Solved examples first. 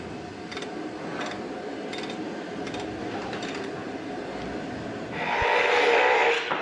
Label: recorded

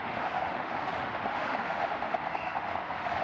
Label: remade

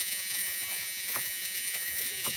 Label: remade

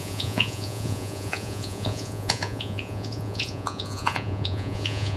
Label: remade